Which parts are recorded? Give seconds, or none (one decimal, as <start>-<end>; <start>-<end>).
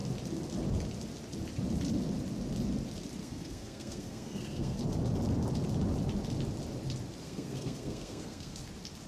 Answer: 0.0-3.2; 4.8-7.2; 8.6-9.1